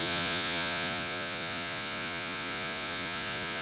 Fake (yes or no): yes